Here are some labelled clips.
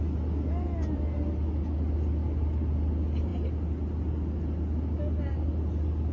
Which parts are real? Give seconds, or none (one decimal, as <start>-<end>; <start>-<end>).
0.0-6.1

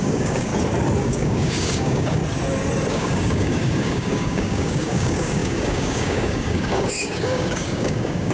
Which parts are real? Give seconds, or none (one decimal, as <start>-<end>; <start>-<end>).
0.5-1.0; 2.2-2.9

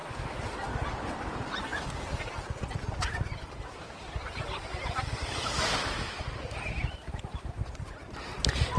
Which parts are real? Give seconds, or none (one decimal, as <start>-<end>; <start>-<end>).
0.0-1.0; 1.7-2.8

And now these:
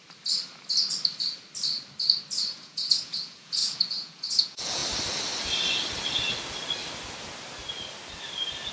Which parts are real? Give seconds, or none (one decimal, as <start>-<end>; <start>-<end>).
0.0-2.4; 4.8-8.7

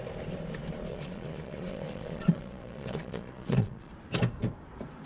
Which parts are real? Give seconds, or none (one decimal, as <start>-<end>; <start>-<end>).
0.0-0.9; 3.9-5.1

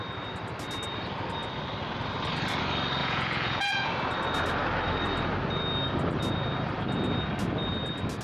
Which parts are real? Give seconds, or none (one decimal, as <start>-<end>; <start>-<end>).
0.0-3.0; 3.9-8.2

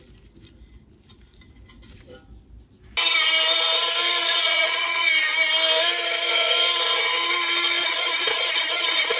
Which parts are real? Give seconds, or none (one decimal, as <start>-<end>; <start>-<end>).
0.0-4.2; 5.1-9.2

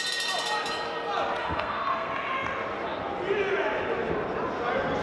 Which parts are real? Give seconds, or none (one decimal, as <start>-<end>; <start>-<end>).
0.0-1.4; 2.1-5.0